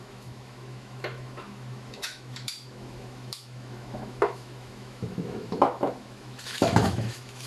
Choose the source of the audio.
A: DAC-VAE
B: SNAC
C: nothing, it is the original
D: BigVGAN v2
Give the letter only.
A